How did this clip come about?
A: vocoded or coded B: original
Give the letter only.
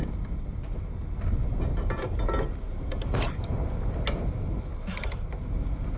B